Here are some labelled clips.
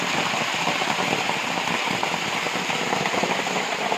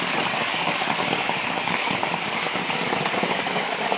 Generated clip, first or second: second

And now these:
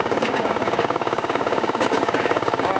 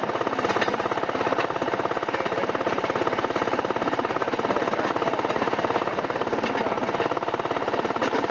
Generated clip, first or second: first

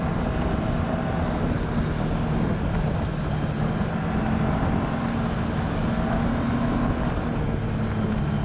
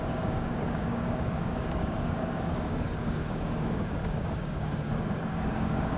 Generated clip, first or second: second